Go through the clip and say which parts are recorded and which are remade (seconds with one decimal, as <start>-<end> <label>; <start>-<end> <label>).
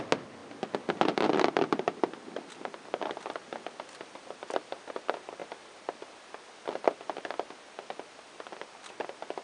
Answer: 0.0-9.4 recorded